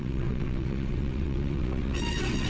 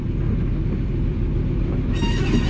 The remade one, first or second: first